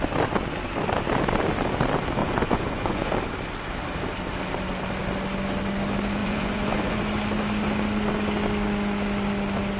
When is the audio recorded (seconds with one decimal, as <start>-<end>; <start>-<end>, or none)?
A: 0.0-2.2; 3.1-6.2; 7.0-9.8